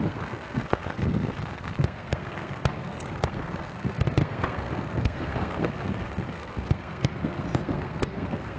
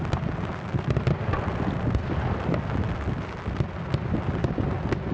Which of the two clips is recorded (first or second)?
second